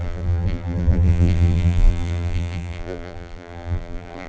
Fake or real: fake